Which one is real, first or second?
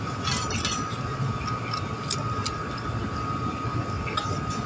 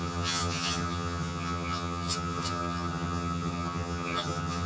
first